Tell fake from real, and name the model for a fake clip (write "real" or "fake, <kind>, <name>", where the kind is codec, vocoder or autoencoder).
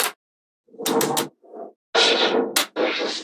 real